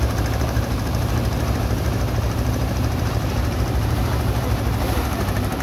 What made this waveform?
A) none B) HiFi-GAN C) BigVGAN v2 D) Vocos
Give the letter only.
C